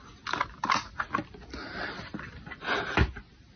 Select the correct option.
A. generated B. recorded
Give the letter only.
B